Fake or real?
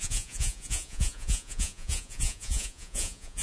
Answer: fake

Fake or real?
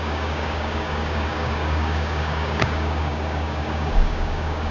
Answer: fake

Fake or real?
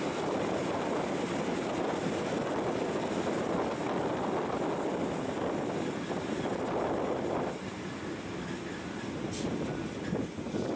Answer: real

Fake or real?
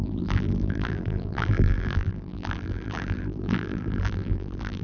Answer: fake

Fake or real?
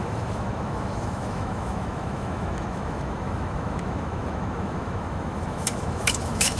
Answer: fake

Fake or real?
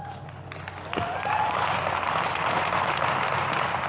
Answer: real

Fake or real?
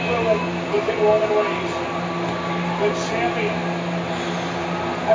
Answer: real